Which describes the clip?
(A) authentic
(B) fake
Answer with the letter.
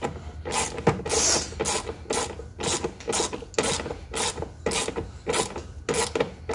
A